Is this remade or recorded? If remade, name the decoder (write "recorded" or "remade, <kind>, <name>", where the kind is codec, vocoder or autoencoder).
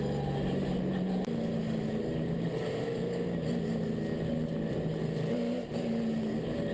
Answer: recorded